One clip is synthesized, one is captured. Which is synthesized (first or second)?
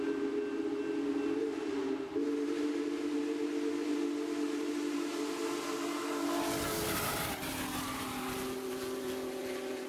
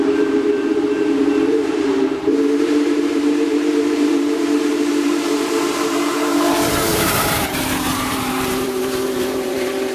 second